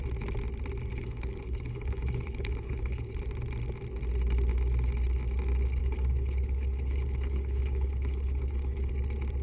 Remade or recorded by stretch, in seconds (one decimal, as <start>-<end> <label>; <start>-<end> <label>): 0.0-0.9 recorded; 0.9-3.1 remade; 3.1-5.8 recorded; 5.8-8.9 remade; 8.9-9.4 recorded